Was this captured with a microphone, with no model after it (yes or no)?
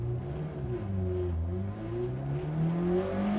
yes